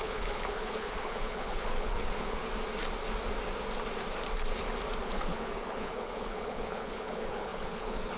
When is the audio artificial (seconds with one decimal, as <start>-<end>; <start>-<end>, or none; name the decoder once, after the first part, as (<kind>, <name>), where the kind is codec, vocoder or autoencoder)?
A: 0.0-2.4 (codec, HILCodec); 5.0-8.2